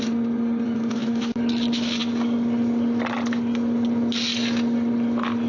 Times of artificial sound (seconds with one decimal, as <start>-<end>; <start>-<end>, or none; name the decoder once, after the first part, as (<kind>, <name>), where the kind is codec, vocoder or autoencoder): 1.0-2.0 (autoencoder, DAC-VAE)